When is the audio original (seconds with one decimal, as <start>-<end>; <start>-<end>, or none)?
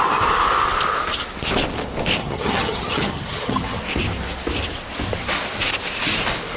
0.0-2.2; 3.8-6.6